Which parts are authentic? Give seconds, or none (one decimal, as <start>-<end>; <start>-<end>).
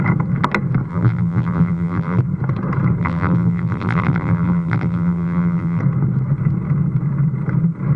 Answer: 0.0-0.9; 2.2-3.0; 5.8-8.0